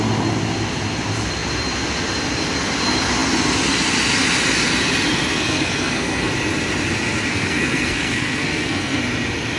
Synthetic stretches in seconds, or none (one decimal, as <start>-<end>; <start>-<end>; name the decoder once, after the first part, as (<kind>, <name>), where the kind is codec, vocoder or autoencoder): 5.3-6.3 (codec, SNAC); 7.3-9.0